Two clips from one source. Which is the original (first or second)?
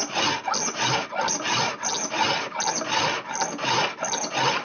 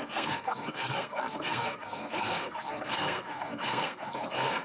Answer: first